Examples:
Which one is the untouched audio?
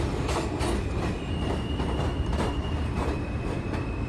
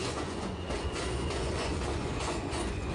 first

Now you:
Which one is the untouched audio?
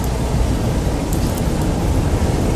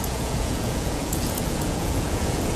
first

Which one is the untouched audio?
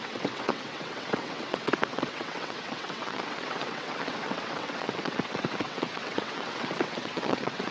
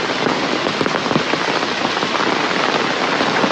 second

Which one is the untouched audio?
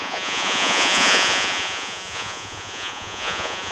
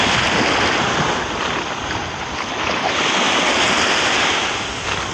second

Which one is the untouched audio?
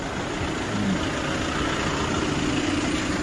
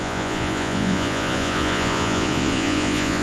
first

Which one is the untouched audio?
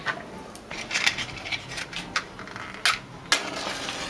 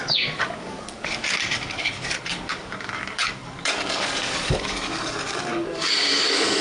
first